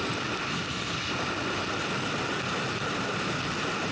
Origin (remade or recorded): recorded